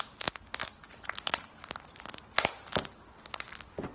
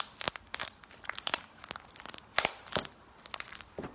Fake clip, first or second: second